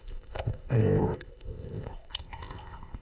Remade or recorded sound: remade